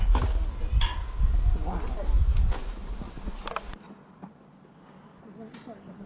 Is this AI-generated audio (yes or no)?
no